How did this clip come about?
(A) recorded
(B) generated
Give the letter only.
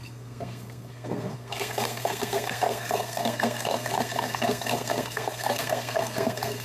B